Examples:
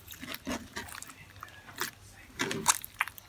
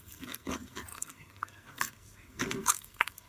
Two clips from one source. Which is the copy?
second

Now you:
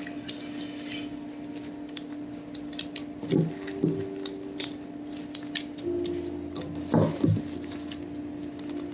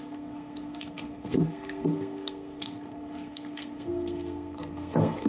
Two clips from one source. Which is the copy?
second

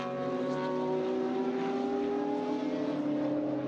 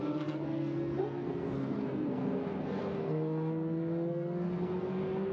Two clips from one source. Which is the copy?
second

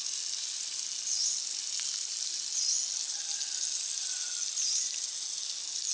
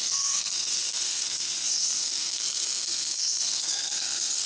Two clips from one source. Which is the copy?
second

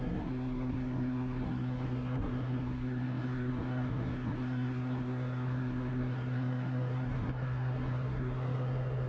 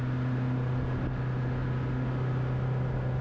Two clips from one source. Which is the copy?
first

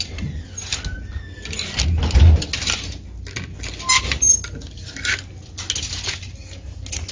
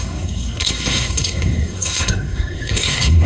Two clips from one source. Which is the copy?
second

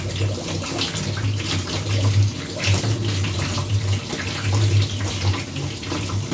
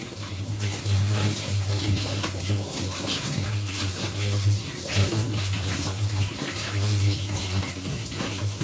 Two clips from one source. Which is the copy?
second